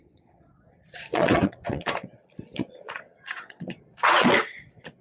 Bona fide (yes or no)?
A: no